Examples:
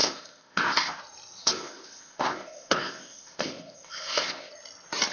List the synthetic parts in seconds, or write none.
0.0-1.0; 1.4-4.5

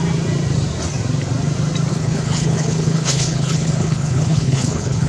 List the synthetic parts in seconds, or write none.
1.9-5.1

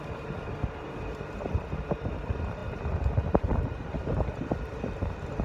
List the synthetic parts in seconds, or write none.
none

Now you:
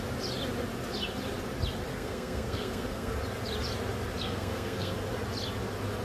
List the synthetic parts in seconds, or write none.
1.9-3.1; 4.2-4.9